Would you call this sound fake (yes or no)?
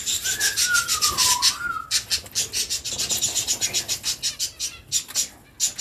no